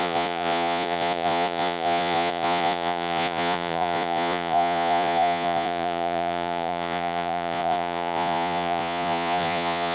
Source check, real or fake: fake